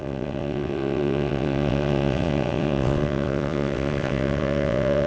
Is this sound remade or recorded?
remade